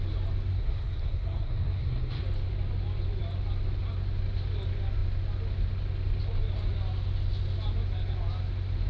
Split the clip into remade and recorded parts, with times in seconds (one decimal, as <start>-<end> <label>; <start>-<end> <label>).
0.0-0.5 recorded; 0.5-2.2 remade; 2.2-8.9 recorded